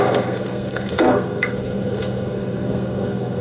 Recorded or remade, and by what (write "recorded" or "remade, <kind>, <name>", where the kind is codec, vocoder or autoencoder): remade, codec, SNAC